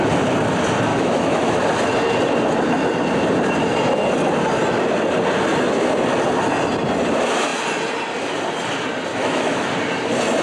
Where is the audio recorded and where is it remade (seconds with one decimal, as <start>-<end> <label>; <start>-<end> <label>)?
0.0-0.9 recorded; 0.9-1.6 remade; 1.6-9.1 recorded; 9.1-9.7 remade; 9.7-10.4 recorded